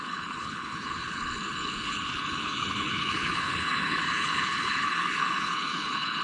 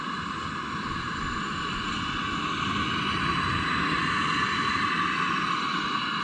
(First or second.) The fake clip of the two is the first